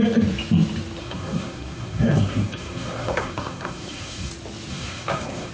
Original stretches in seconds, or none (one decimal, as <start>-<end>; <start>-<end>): 0.0-1.0; 4.3-4.7